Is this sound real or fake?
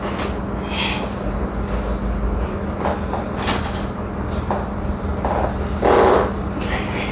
real